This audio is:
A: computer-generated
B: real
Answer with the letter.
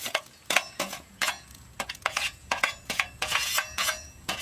A